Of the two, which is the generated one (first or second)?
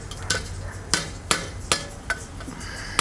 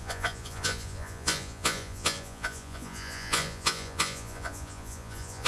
second